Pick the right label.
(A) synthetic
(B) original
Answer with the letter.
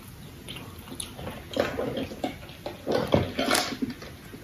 B